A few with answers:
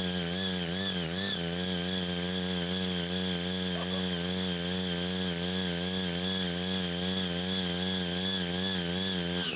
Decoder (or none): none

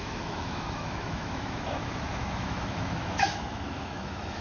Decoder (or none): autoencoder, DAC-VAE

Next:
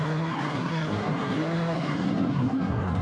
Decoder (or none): codec, SNAC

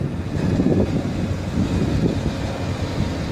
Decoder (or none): none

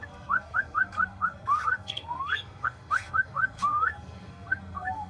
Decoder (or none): codec, SNAC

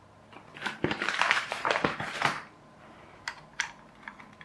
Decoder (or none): vocoder, BigVGAN v2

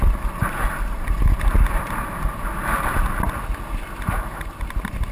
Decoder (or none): none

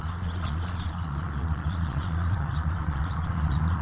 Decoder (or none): vocoder, Vocos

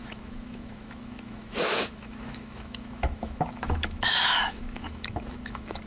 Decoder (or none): autoencoder, DAC-VAE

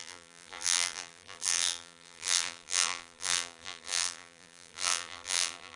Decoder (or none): vocoder, BigVGAN v2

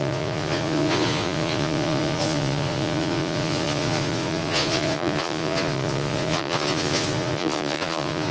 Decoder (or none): vocoder, Vocos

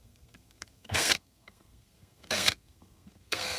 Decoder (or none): codec, SNAC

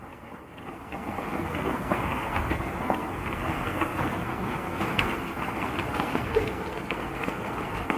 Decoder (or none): codec, SNAC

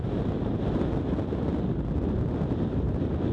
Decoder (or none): none